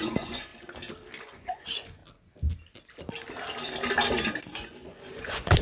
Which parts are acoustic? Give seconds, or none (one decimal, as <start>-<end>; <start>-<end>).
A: 0.5-1.2; 2.0-4.4